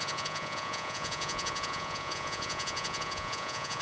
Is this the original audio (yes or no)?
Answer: no